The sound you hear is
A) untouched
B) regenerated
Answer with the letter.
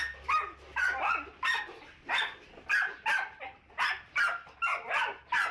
A